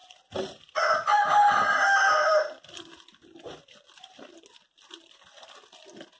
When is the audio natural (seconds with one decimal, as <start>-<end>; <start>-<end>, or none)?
0.0-6.2